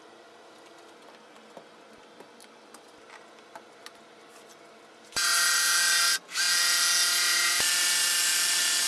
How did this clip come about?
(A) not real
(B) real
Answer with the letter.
B